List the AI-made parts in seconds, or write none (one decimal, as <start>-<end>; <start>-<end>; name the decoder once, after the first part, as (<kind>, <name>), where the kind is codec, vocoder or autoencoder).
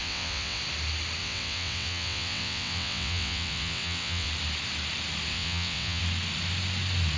0.0-0.6 (vocoder, WaveNeXt); 1.2-4.3; 5.3-6.0